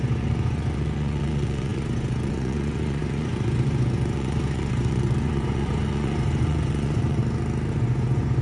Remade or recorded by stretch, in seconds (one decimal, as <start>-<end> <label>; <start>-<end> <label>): 0.0-7.2 remade; 7.2-7.7 recorded; 7.7-8.4 remade